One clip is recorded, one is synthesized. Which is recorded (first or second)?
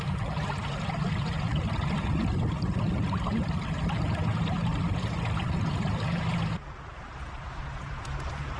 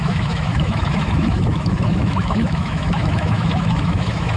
first